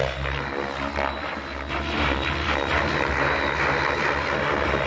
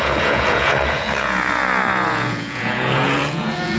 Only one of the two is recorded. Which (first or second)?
first